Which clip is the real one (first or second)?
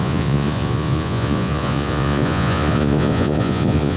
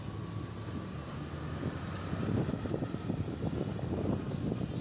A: second